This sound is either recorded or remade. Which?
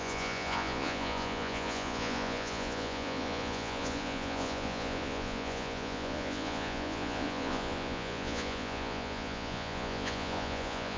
remade